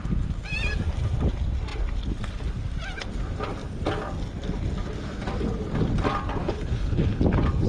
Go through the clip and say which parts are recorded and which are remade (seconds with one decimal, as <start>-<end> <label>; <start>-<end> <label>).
0.0-6.4 recorded; 6.4-7.2 remade; 7.2-7.7 recorded